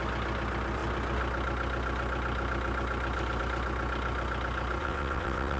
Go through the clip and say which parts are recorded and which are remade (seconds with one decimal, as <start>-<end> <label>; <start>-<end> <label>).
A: 0.0-4.8 recorded; 4.8-5.6 remade